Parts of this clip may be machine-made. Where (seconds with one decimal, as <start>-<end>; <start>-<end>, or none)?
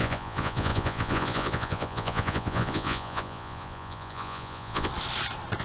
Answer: 0.0-4.9